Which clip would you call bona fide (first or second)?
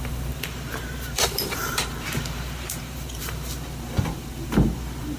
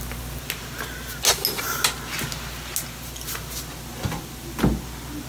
second